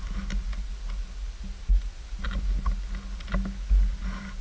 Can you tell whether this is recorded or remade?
recorded